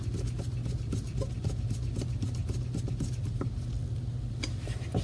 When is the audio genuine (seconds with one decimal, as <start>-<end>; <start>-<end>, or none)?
0.0-5.0